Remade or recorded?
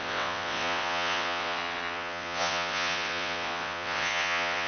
remade